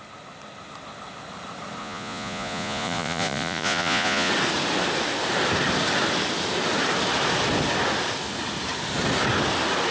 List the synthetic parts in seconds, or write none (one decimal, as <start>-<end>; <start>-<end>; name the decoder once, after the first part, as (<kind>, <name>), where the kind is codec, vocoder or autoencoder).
1.8-4.3 (vocoder, Vocos)